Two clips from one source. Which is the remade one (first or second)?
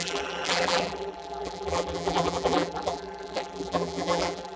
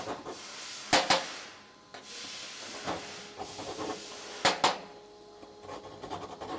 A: first